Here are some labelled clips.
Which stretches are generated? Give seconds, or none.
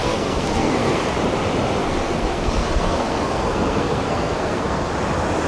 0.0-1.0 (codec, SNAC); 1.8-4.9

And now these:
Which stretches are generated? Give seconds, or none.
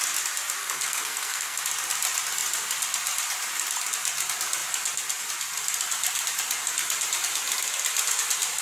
0.6-1.6 (codec, SNAC)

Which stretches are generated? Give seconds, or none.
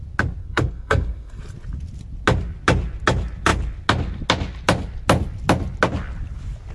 0.4-1.4 (codec, SNAC)